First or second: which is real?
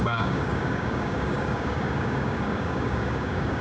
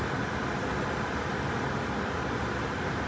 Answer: second